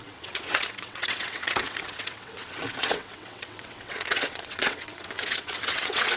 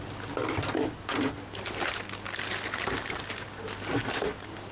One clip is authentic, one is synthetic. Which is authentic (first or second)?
second